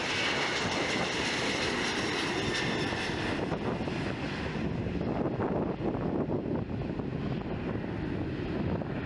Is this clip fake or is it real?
real